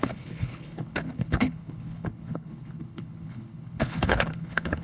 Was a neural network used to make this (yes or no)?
yes